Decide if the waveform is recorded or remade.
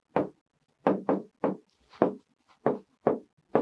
recorded